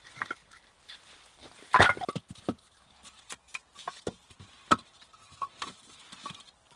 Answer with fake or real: real